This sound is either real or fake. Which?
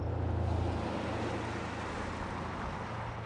real